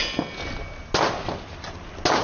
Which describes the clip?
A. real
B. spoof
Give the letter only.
A